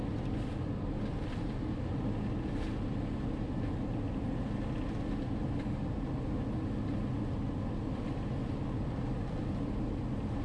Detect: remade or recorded recorded